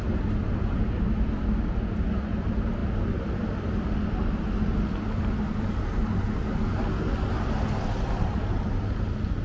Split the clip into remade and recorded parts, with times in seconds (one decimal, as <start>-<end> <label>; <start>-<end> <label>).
0.0-9.4 recorded